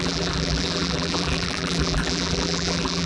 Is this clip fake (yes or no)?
yes